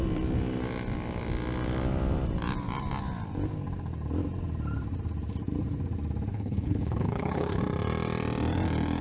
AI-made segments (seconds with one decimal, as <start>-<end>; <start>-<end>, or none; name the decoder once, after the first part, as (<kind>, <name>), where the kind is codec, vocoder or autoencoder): 6.3-7.6 (codec, HILCodec)